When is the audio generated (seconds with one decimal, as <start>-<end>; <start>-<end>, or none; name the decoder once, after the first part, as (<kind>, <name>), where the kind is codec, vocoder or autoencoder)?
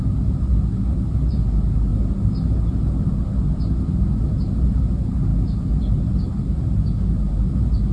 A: none